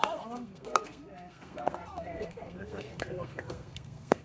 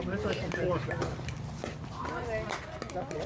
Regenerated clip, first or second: first